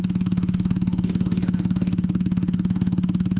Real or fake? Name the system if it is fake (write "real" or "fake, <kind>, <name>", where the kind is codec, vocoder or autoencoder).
fake, autoencoder, DAC-VAE